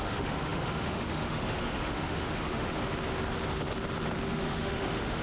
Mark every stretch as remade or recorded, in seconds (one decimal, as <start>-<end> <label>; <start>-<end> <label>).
0.0-2.8 remade; 2.8-4.3 recorded; 4.3-5.2 remade